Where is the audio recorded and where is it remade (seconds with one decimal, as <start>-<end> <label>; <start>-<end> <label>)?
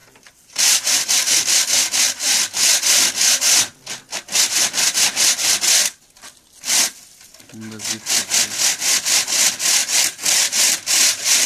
0.0-0.8 remade; 0.8-9.8 recorded; 9.8-10.4 remade; 10.4-11.5 recorded